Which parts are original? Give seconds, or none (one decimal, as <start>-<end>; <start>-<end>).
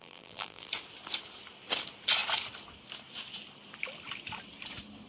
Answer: 0.7-5.1